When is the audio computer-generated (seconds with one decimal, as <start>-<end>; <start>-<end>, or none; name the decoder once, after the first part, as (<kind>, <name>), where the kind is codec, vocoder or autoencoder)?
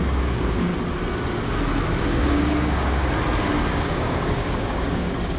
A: 0.0-0.7 (codec, DAC); 2.0-3.0; 3.7-5.4